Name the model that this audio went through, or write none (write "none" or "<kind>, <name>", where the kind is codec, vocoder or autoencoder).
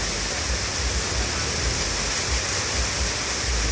none